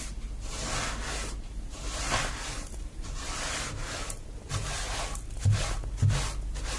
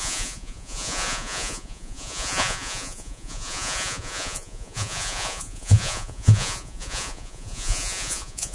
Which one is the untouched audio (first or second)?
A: first